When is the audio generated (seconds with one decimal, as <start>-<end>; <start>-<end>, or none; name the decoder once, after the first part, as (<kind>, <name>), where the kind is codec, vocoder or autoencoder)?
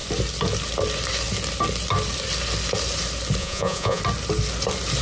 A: 3.4-4.0 (vocoder, Vocos)